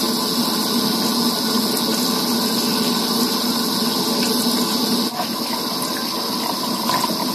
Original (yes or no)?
yes